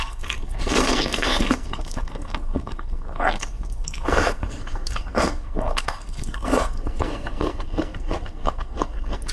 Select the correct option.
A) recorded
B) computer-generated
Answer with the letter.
B